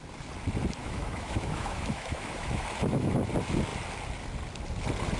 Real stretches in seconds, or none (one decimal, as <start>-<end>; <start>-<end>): 0.0-0.8; 3.1-5.2